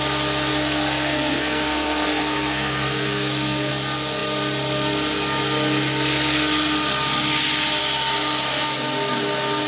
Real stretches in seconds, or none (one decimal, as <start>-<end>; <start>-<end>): 0.0-0.5; 3.7-9.7